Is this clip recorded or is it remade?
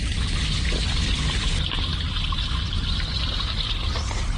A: recorded